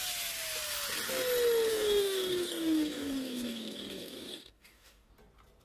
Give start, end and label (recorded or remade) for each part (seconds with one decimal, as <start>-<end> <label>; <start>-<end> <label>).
0.0-1.7 recorded; 1.7-5.1 remade; 5.1-5.6 recorded